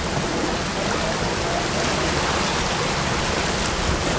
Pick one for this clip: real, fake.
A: real